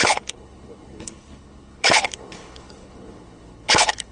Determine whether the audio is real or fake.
fake